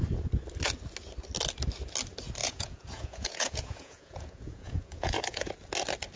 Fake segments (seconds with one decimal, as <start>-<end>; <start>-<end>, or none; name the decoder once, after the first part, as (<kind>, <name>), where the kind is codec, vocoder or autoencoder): 2.4-5.5 (vocoder, Vocos)